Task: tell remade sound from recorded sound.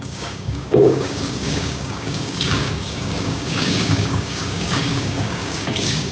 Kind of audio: remade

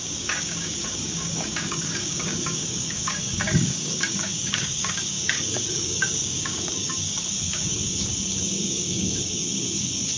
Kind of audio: remade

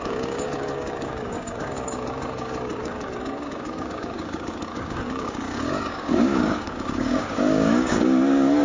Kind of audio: remade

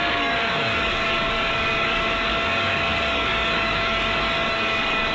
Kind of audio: remade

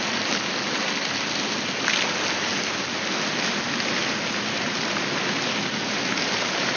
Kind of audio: recorded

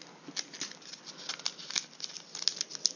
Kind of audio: recorded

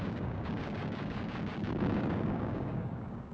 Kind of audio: remade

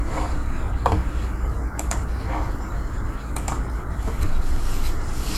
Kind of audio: remade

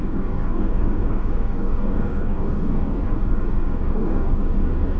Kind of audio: remade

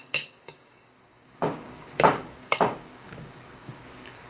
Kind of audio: remade